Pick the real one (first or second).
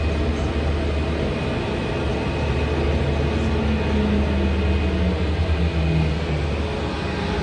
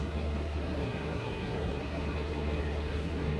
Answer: first